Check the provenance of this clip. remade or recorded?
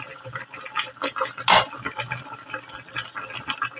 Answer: recorded